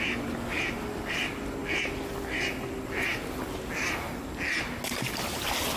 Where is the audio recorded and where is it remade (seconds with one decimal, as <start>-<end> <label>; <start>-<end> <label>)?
0.0-5.8 recorded